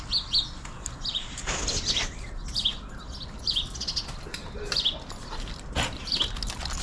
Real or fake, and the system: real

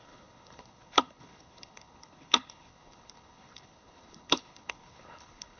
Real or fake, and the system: fake, codec, HILCodec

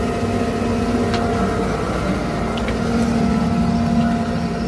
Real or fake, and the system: real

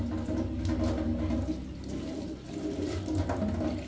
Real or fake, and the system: real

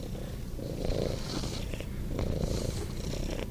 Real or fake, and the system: real